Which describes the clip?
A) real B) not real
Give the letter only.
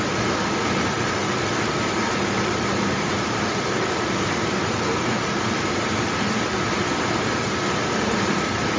B